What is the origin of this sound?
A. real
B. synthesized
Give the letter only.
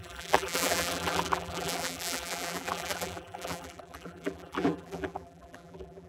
B